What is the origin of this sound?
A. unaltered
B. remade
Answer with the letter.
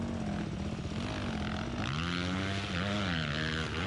A